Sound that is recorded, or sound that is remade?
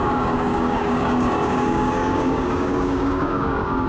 remade